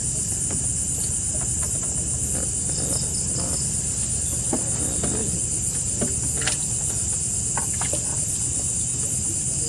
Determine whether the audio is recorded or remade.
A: recorded